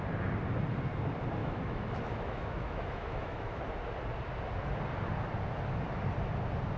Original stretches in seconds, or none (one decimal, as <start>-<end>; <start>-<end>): 0.0-1.4; 3.6-6.8